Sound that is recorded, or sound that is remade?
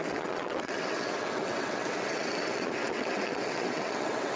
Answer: remade